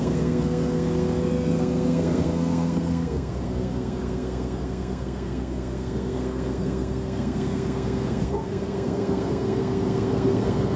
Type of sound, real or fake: fake